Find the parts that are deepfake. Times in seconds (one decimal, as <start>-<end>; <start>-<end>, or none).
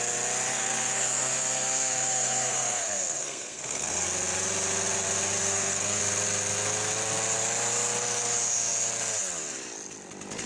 0.5-4.0; 5.4-6.0